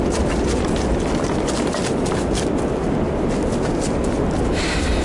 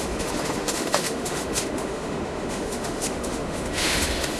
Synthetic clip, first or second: second